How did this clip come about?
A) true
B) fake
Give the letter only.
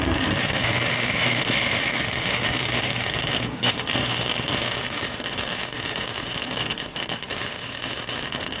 B